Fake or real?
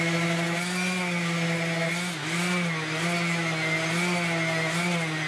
real